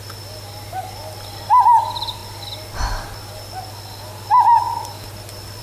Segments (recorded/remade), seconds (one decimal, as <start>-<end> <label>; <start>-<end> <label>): 0.0-5.6 recorded